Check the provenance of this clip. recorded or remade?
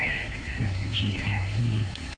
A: remade